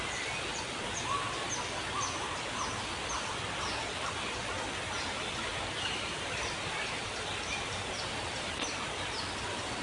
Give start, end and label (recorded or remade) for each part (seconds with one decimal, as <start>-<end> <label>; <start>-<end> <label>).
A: 0.0-5.5 recorded; 5.5-8.5 remade; 8.5-9.8 recorded